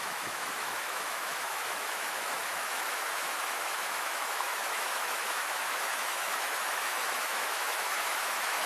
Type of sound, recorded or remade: remade